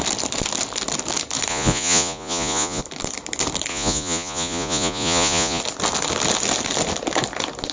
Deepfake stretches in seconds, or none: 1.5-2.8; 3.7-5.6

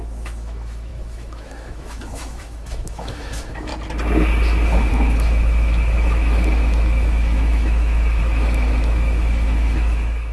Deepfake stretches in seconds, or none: 0.0-3.7; 4.9-10.3